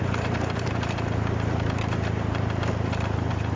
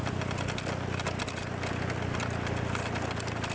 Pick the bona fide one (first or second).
second